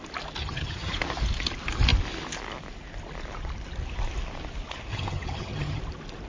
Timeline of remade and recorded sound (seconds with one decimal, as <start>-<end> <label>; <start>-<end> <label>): 0.0-0.4 recorded; 0.4-0.9 remade; 0.9-4.9 recorded; 4.9-5.8 remade; 5.8-6.3 recorded